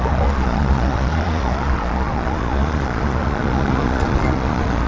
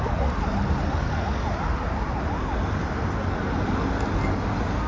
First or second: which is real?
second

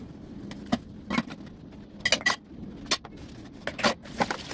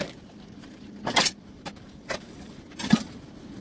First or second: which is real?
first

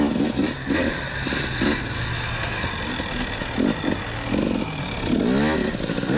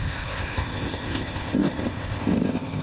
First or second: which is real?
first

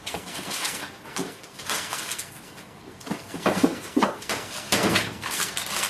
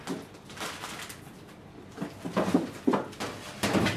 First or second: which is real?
second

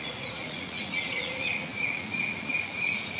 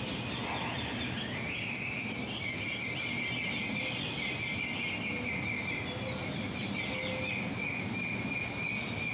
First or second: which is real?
second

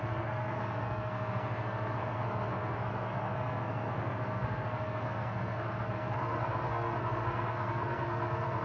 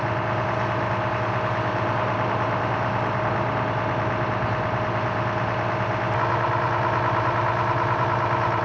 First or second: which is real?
second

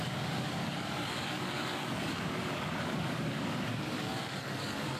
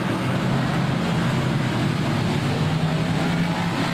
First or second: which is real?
second